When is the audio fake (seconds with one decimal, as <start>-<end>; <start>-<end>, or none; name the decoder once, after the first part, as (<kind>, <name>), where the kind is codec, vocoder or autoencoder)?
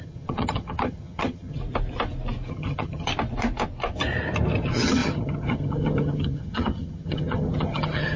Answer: 0.0-1.6 (vocoder, HiFi-GAN); 2.5-3.1; 4.6-8.2